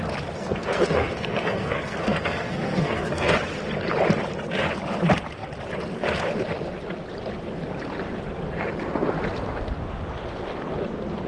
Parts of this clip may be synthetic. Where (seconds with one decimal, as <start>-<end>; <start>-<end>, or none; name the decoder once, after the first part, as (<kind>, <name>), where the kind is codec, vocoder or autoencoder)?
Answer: 0.4-3.4 (codec, SNAC)